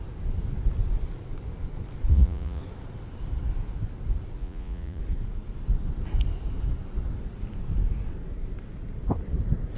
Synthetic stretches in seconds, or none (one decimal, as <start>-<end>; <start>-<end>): 2.1-2.6; 4.4-5.0

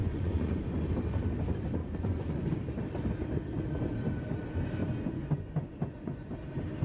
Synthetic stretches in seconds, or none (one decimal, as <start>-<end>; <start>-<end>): 0.0-0.9; 1.8-2.5; 4.8-6.3